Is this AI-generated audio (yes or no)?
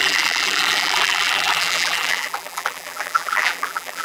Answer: yes